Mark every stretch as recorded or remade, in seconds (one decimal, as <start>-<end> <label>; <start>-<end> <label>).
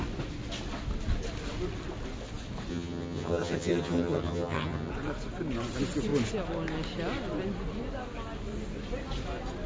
0.0-2.7 recorded; 2.7-4.9 remade; 4.9-9.7 recorded